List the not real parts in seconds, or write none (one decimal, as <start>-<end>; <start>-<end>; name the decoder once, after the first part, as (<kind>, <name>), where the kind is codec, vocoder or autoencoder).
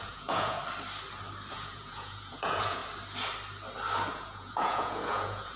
0.0-0.6 (vocoder, Vocos); 1.5-2.8; 4.1-5.6